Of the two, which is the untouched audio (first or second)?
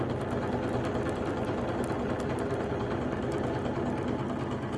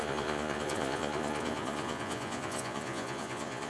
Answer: first